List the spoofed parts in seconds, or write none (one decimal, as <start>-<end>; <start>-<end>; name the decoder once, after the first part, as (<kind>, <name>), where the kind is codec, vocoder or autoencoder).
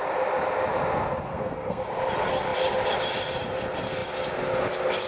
1.3-1.8 (codec, SNAC)